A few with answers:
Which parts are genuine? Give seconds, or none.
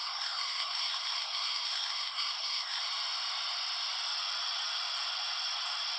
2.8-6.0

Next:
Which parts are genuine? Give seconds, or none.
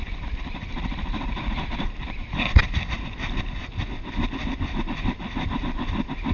0.0-6.3